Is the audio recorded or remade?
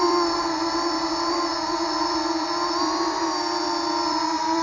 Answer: remade